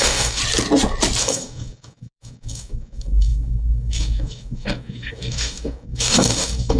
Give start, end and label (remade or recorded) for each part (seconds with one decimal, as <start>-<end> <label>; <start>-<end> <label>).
0.0-0.4 remade; 0.4-1.2 recorded; 1.2-6.8 remade